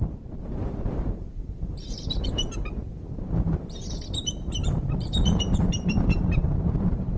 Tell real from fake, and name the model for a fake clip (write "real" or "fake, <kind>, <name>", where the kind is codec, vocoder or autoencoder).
fake, vocoder, BigVGAN v2